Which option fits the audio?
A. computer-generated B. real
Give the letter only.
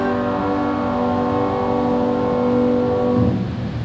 B